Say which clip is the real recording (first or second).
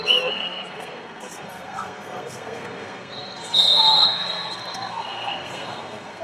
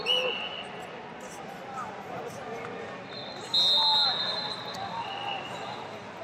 second